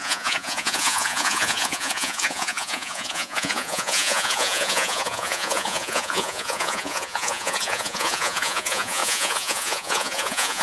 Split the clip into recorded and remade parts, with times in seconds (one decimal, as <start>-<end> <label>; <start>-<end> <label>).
0.0-10.6 remade